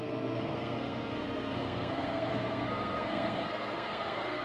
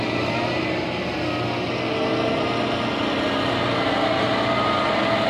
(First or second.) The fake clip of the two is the first